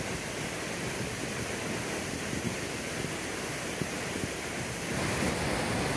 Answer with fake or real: real